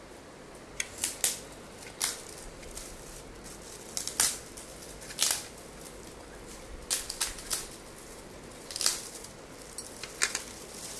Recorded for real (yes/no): yes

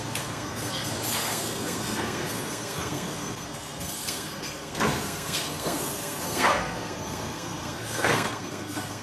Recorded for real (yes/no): no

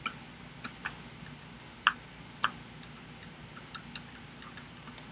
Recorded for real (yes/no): yes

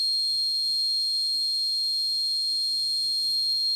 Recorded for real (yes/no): yes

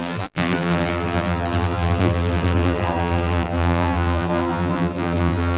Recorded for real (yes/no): no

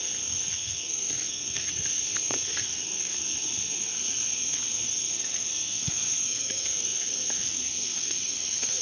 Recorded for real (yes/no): no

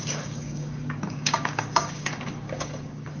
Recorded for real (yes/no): no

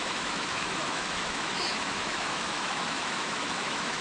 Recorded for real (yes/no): no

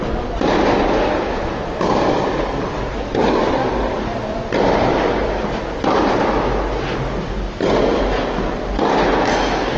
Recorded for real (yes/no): yes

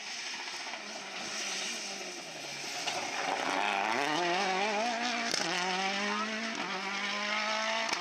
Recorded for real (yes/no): yes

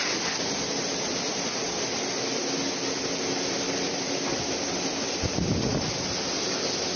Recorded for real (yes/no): yes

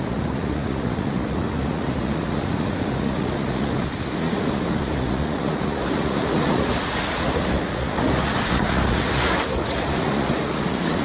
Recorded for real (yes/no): no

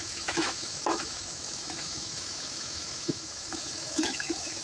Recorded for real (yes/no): no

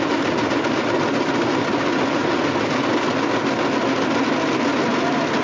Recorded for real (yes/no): yes